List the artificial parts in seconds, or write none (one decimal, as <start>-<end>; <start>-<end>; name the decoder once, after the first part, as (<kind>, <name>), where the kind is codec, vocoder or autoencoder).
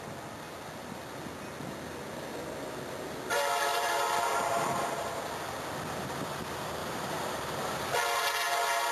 3.7-5.2 (vocoder, BigVGAN v2); 6.8-7.8